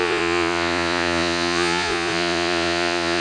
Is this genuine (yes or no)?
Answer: no